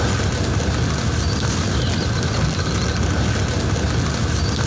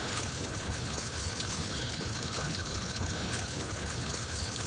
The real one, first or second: first